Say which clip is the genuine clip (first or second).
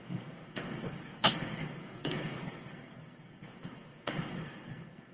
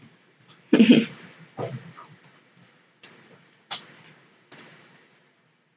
second